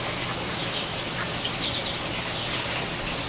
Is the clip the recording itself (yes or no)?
yes